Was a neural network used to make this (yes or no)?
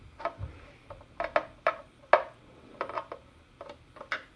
no